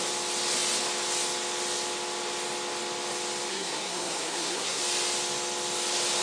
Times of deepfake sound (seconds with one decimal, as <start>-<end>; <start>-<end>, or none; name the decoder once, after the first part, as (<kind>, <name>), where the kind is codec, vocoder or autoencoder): 3.5-4.8 (codec, SNAC)